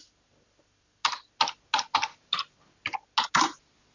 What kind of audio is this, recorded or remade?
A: recorded